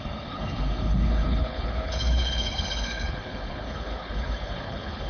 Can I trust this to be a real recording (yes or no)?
no